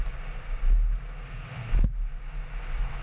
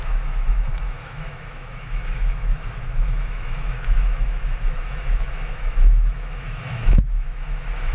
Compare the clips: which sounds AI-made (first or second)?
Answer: second